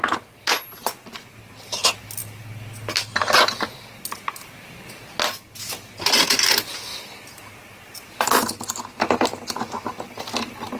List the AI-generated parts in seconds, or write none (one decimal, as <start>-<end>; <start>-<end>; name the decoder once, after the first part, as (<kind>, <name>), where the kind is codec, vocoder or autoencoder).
none